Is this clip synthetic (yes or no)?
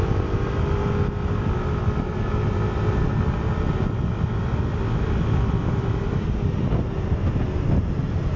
no